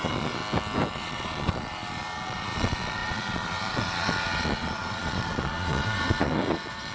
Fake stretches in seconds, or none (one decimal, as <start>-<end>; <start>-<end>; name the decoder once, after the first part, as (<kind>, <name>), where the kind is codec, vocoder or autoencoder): 0.0-0.4 (vocoder, Vocos); 0.9-6.9